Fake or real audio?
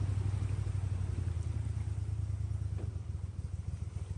real